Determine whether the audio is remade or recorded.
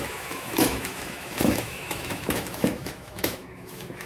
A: remade